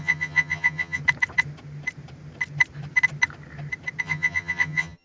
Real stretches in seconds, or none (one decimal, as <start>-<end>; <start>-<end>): 1.0-4.0